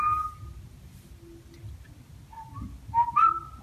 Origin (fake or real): real